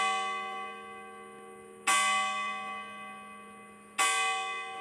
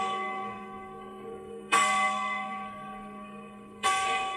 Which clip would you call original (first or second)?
first